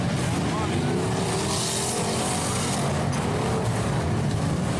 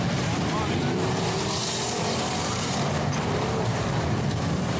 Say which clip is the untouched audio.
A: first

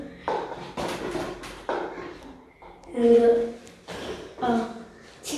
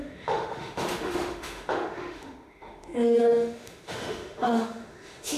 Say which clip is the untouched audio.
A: first